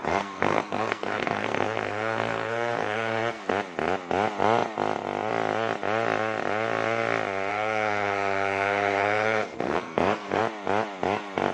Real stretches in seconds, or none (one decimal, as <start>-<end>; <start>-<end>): 3.5-7.5; 10.4-11.5